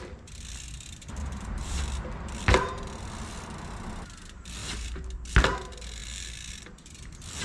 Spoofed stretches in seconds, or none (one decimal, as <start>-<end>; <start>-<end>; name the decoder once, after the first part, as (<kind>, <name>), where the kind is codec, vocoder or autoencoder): 1.2-1.8 (vocoder, BigVGAN v2); 4.6-5.3